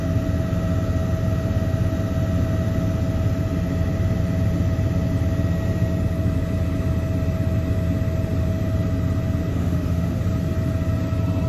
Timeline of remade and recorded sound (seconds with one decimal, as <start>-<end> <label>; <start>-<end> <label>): 0.0-9.5 recorded; 9.5-10.2 remade; 10.2-11.5 recorded

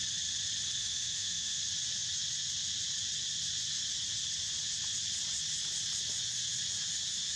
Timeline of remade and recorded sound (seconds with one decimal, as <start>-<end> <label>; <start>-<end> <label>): 0.0-0.8 recorded; 0.8-1.6 remade; 1.6-7.4 recorded

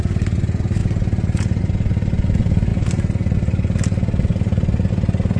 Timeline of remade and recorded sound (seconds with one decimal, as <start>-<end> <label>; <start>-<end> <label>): 0.0-5.4 recorded

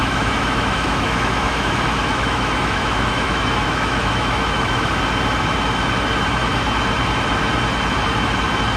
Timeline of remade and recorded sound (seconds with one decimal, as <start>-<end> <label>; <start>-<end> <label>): 0.0-5.0 remade; 5.0-8.8 recorded

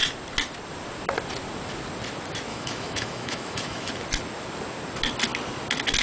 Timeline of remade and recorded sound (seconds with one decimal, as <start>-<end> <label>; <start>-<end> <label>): 0.0-2.5 recorded; 2.5-3.9 remade; 3.9-6.0 recorded

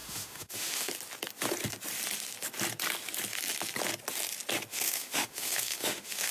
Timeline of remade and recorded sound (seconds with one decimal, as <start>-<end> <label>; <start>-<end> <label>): 0.0-0.9 remade; 0.9-4.7 recorded; 4.7-6.3 remade

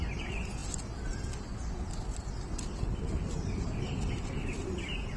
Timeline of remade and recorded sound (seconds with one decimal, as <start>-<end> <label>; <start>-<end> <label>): 0.0-5.2 recorded